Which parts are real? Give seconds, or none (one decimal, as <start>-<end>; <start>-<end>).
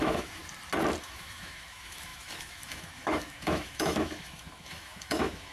0.4-1.0